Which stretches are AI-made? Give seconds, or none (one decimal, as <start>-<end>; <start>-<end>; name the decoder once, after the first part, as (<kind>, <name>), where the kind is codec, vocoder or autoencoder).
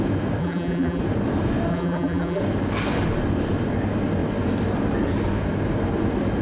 0.4-1.0 (vocoder, BigVGAN v2); 1.7-2.4